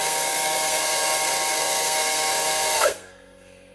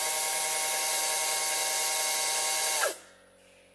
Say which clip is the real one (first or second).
second